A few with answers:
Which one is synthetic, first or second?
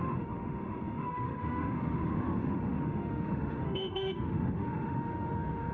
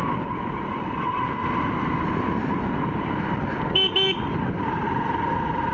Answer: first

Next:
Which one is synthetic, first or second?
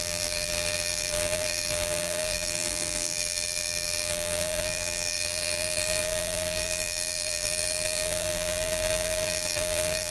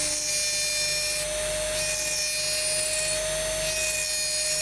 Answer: first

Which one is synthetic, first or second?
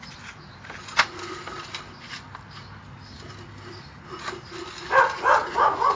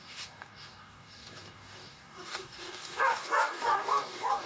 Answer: second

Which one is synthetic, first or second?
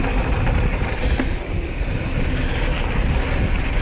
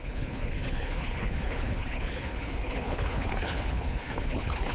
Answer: second